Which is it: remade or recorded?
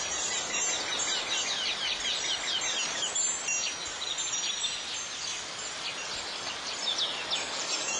remade